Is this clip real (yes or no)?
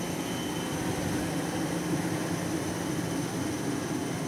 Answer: yes